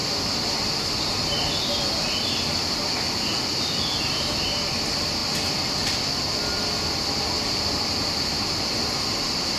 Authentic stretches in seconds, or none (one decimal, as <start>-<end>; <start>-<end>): 0.0-9.6